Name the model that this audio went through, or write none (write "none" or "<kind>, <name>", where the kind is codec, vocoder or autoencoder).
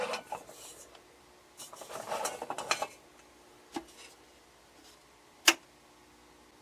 none